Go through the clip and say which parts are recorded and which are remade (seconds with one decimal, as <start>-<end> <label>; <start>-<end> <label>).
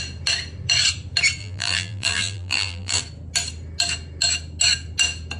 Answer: 0.0-1.4 recorded; 1.4-3.0 remade; 3.0-5.4 recorded